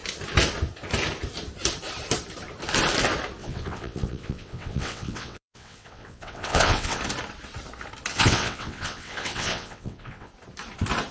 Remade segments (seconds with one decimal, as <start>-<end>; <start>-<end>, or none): 3.4-7.0; 8.1-10.3